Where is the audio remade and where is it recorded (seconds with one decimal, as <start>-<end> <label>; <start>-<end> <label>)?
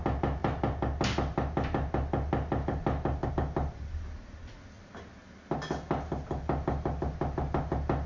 0.0-8.1 recorded